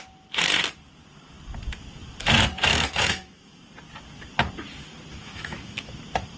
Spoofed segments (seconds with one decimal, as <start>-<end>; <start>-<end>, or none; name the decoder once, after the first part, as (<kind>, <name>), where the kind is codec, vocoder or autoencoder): 2.7-3.6 (autoencoder, DAC-VAE); 5.1-6.0